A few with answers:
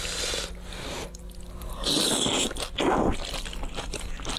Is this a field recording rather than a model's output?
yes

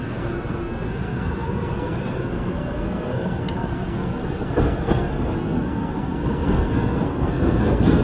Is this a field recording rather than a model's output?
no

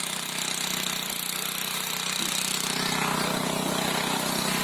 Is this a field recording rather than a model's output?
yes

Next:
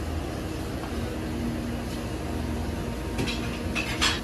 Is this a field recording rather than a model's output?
yes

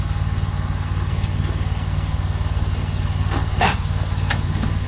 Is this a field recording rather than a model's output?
no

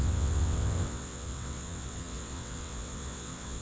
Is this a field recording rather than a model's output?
no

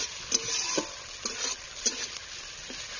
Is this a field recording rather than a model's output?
yes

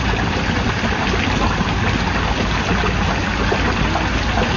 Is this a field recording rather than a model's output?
yes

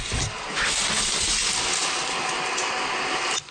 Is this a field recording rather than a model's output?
yes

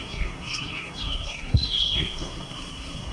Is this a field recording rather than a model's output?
no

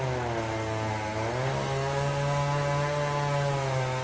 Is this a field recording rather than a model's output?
yes